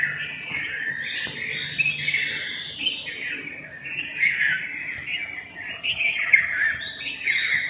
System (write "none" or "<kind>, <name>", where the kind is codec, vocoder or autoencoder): none